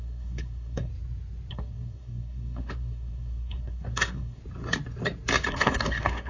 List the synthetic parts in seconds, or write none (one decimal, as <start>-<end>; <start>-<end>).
0.0-0.9; 1.5-4.4; 5.5-6.3